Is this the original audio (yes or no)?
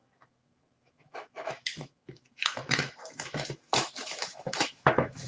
no